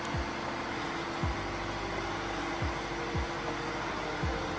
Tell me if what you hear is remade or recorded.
recorded